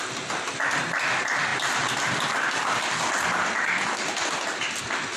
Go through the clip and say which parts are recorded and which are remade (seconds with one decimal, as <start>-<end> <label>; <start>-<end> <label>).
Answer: 0.0-5.2 recorded